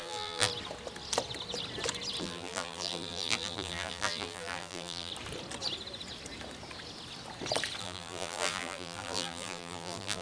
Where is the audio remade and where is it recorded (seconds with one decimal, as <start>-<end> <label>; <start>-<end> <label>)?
0.0-0.5 remade; 0.5-2.2 recorded; 2.2-5.1 remade; 5.1-7.8 recorded; 7.8-10.2 remade